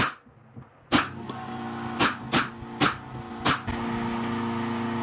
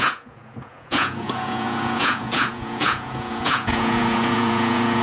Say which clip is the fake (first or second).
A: second